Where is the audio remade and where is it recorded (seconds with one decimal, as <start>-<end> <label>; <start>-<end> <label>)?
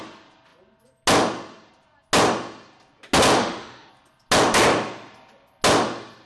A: 0.0-3.4 recorded; 3.4-3.9 remade; 3.9-6.3 recorded